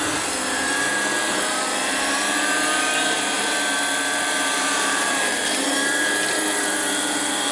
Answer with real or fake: fake